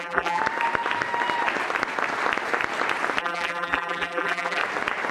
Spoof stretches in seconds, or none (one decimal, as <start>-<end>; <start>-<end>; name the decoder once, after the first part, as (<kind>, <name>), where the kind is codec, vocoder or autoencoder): 0.0-0.4 (vocoder, BigVGAN v2); 3.2-4.6